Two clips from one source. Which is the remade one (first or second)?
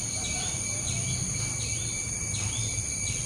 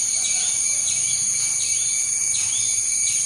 second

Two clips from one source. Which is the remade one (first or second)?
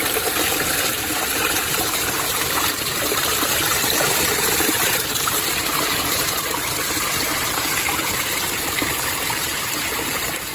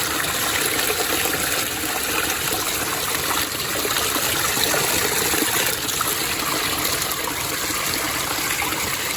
first